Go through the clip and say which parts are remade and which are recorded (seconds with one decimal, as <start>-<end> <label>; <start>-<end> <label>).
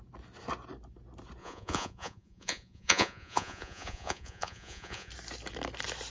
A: 0.0-1.4 recorded; 1.4-5.1 remade; 5.1-6.1 recorded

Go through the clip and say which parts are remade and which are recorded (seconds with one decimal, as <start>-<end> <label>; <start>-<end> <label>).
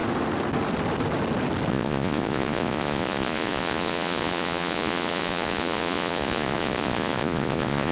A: 0.0-1.7 recorded; 1.7-7.9 remade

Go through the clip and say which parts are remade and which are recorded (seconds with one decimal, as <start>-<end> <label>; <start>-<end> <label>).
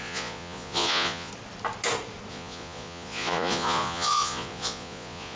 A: 0.0-1.3 remade; 1.3-2.3 recorded; 2.3-5.4 remade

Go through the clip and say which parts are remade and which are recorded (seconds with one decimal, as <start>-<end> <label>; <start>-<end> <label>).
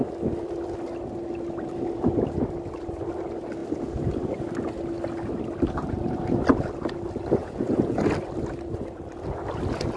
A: 0.0-7.4 recorded; 7.4-8.0 remade; 8.0-10.0 recorded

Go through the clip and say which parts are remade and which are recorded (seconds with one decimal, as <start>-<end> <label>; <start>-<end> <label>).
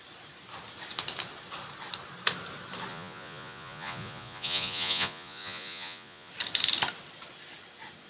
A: 0.0-2.9 recorded; 2.9-6.3 remade; 6.3-8.1 recorded